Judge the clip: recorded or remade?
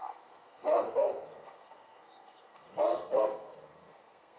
remade